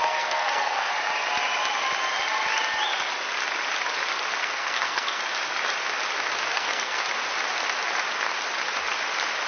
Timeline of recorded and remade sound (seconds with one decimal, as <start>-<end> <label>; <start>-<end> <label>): 0.0-0.9 remade; 0.9-4.4 recorded; 4.4-5.2 remade; 5.2-6.5 recorded; 6.5-7.0 remade; 7.0-9.5 recorded

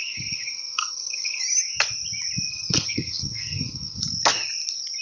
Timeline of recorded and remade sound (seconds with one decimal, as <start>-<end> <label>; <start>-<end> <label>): 0.0-1.4 remade; 1.4-2.5 recorded; 2.5-4.0 remade; 4.0-5.0 recorded

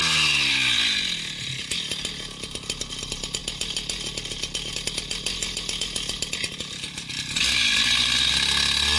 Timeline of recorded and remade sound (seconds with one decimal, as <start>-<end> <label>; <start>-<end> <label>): 0.0-9.0 recorded

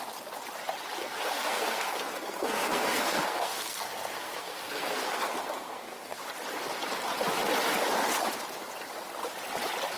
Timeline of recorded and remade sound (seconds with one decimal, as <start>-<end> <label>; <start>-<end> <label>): 0.0-1.0 recorded; 1.0-6.2 remade; 6.2-10.0 recorded

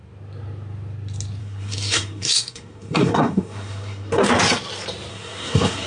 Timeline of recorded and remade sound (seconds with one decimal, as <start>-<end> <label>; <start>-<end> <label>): 0.0-1.4 recorded; 1.4-4.3 remade; 4.3-5.1 recorded; 5.1-5.9 remade

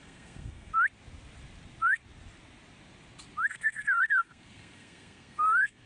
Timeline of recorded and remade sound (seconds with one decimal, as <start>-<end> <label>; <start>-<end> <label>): 0.0-0.7 remade; 0.7-3.5 recorded; 3.5-5.9 remade